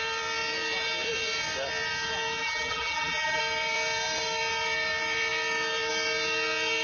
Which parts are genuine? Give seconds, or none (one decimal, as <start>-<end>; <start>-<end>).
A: 0.0-2.4; 3.4-6.8